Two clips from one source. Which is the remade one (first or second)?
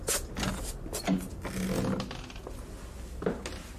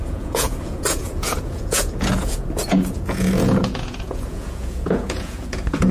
second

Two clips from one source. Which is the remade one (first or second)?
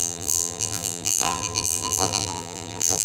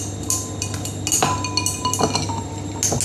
first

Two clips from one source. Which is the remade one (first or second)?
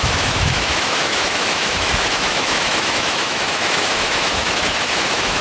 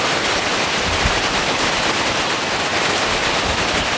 first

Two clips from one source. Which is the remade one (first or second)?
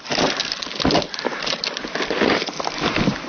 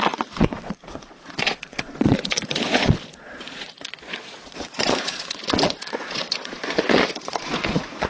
second